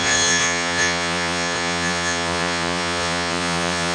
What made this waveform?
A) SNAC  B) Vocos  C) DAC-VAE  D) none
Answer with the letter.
B